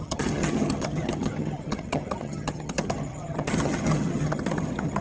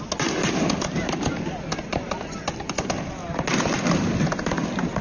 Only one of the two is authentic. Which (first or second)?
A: second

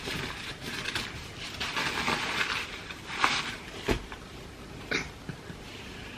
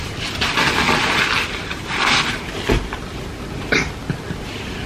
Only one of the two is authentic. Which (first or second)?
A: second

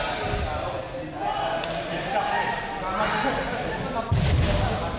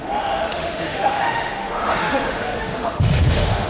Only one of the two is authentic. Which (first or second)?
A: first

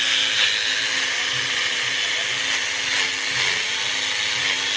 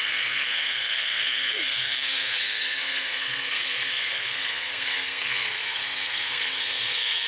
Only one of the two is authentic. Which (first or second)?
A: first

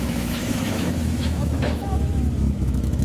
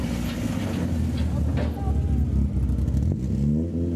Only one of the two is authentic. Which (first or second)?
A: second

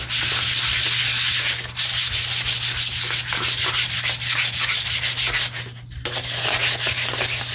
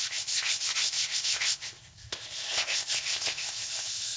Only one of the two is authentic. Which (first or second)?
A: first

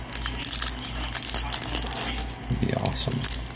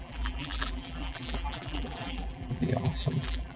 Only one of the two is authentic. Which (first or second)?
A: first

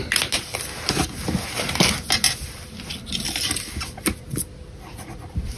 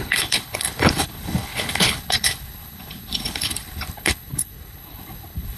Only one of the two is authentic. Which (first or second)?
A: first